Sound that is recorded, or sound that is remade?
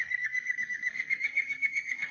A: remade